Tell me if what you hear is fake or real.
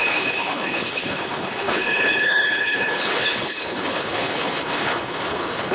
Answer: fake